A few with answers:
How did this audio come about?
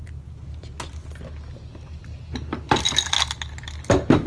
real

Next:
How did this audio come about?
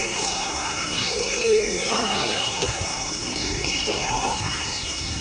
fake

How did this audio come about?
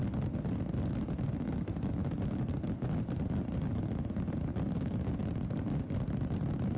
real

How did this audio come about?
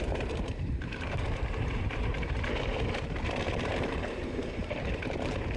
fake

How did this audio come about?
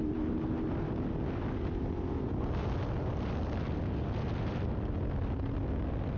real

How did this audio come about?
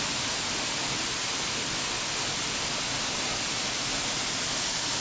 real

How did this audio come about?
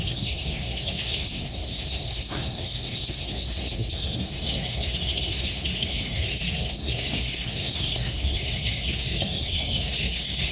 fake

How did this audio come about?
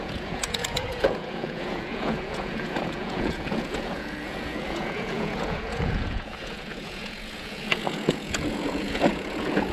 fake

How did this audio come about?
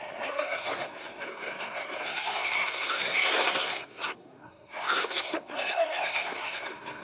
fake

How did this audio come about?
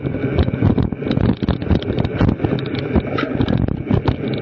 real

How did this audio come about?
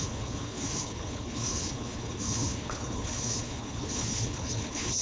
fake